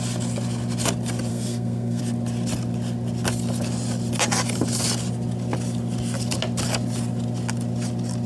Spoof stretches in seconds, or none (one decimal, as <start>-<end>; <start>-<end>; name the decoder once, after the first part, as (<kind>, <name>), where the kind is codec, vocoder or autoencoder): 1.3-2.0 (codec, SNAC)

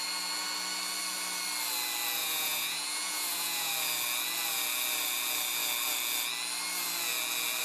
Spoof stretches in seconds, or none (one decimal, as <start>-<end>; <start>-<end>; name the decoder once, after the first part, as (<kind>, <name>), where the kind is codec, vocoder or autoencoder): 2.2-3.7 (vocoder, Vocos)

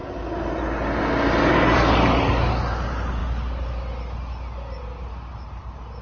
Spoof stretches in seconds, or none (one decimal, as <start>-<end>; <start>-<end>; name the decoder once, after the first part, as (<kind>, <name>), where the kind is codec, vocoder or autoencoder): none

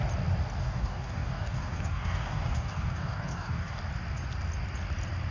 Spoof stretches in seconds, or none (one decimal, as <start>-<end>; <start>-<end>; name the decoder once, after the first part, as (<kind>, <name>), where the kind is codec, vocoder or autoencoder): 0.6-3.8 (codec, DAC)

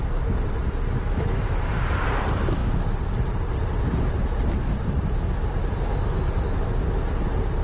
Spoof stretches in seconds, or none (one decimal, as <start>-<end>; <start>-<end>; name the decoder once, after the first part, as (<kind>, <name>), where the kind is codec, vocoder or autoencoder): none